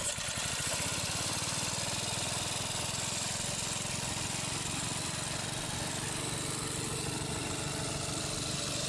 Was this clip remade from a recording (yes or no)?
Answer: no